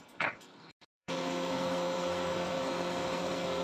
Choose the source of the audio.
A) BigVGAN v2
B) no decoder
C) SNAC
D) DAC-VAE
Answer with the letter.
C